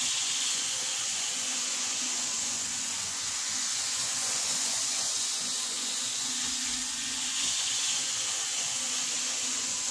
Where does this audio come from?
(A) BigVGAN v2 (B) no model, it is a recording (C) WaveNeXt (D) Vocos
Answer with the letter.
D